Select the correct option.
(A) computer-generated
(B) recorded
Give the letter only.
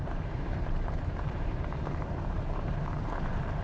A